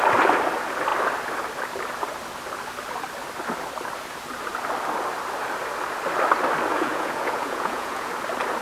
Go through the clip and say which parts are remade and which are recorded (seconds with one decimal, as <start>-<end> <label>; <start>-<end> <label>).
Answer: 0.0-6.7 recorded; 6.7-8.1 remade; 8.1-8.6 recorded